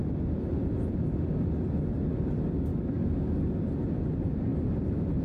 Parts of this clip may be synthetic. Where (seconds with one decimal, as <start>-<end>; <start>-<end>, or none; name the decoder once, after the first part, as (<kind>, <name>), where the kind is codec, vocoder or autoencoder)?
2.7-3.4 (codec, DAC)